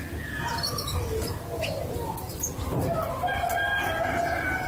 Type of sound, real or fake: real